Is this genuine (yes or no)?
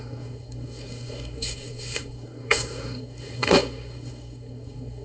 no